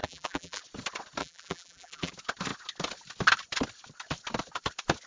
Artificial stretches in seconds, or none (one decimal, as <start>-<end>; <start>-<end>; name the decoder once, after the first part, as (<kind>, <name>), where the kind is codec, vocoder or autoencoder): 0.0-0.6 (vocoder, BigVGAN v2); 1.2-2.1